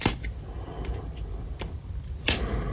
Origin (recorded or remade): remade